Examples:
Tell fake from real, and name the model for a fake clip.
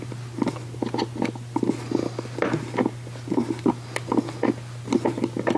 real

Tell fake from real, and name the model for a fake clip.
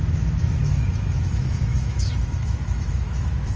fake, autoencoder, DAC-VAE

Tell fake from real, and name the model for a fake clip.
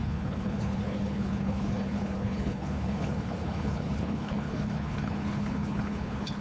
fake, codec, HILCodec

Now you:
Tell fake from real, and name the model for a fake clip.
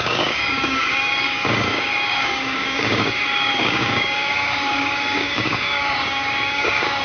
fake, codec, DAC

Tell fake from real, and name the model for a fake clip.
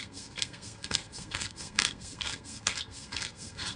fake, codec, SNAC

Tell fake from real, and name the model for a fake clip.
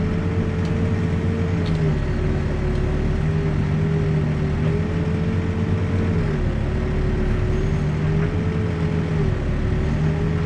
real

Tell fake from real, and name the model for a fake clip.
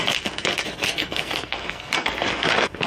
fake, codec, SNAC